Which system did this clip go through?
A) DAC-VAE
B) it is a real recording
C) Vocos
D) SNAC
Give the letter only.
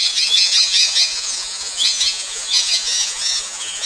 C